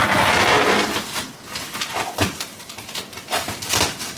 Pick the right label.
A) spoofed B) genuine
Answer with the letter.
A